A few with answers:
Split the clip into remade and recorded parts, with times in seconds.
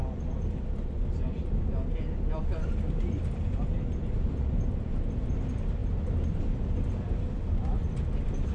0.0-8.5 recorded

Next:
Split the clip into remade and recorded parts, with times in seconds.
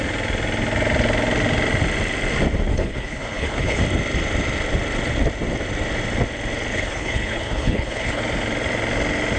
0.0-2.7 recorded; 2.7-3.8 remade; 3.8-6.7 recorded; 6.7-8.2 remade; 8.2-9.4 recorded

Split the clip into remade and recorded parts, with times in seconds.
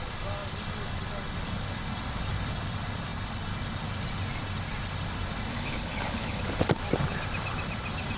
0.0-5.5 recorded; 5.5-6.4 remade; 6.4-8.2 recorded